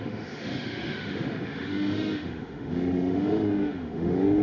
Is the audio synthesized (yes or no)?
yes